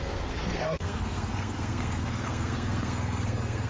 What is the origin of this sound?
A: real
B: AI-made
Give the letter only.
B